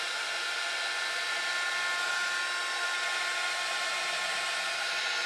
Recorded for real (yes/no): yes